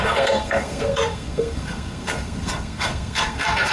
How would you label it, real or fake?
fake